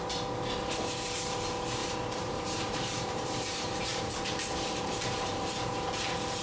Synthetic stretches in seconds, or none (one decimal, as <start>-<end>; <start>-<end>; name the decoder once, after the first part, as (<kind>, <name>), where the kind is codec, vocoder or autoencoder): 1.8-4.1 (vocoder, BigVGAN v2)